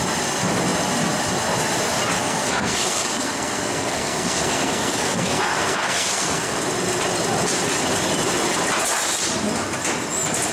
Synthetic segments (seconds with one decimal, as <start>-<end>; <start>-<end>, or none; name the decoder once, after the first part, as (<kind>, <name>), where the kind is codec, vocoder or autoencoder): 2.2-6.6 (codec, SNAC)